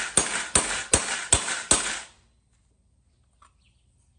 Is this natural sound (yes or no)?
yes